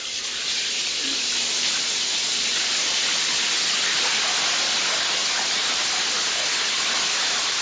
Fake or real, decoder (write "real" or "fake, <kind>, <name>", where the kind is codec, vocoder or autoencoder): real